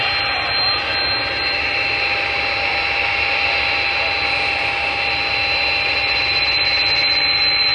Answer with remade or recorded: recorded